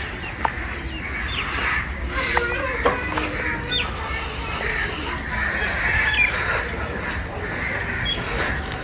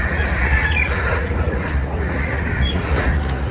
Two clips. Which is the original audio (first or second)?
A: first